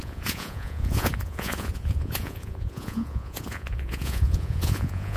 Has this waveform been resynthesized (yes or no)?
yes